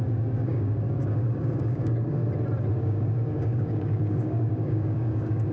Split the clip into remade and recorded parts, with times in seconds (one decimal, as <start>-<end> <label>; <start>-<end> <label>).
0.0-2.2 remade; 2.2-2.8 recorded; 2.8-5.5 remade